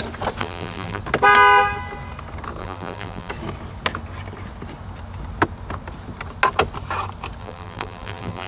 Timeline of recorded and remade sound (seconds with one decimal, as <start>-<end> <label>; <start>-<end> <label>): 0.0-0.4 recorded; 0.4-1.0 remade; 1.0-2.6 recorded; 2.6-3.3 remade; 3.3-7.4 recorded; 7.4-8.5 remade